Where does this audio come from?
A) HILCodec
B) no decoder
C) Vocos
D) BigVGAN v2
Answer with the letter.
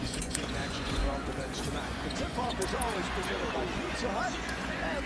C